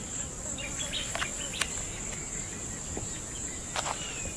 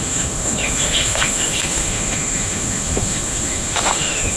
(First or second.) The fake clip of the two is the second